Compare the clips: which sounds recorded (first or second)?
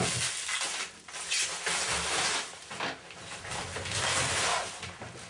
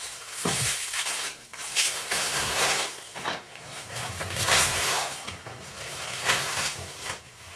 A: first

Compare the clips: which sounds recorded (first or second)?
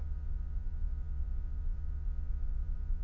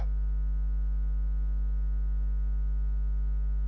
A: second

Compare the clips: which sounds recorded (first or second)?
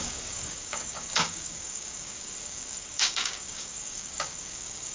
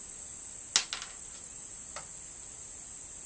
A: second